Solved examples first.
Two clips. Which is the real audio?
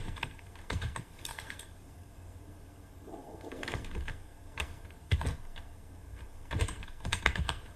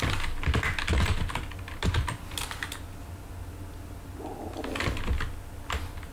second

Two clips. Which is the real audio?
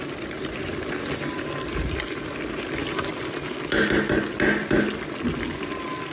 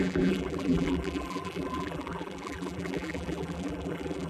first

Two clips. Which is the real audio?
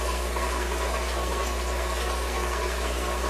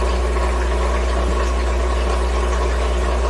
second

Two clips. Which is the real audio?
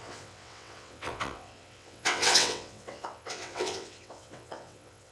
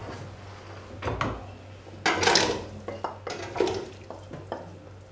second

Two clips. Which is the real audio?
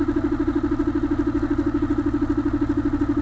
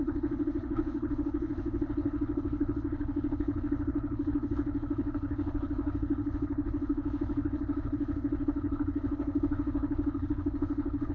first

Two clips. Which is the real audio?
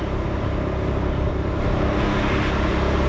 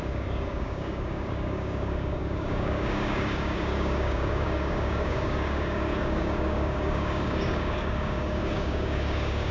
first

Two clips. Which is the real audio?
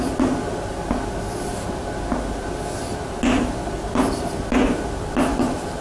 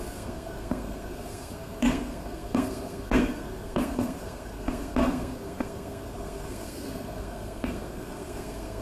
first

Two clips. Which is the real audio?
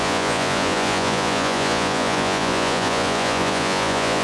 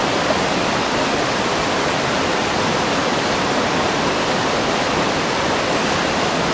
second